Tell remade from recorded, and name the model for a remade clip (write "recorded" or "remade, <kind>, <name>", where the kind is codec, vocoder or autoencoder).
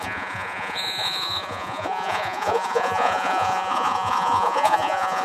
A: remade, vocoder, Vocos